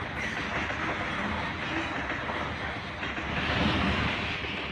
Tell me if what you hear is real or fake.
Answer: real